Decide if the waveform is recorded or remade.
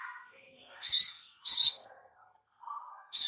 remade